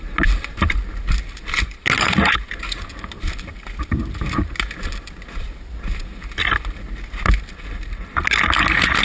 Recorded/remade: recorded